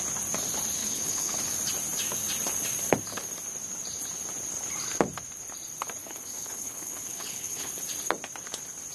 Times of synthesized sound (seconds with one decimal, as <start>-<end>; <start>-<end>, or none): 0.8-1.4; 6.0-7.7